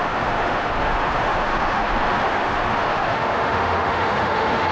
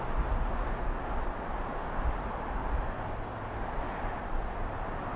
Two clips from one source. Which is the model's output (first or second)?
first